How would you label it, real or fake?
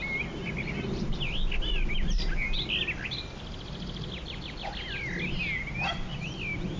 real